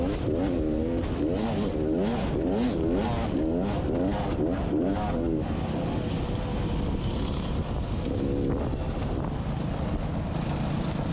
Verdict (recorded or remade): recorded